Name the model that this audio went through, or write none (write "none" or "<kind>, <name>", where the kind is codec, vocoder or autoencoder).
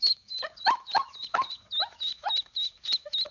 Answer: autoencoder, DAC-VAE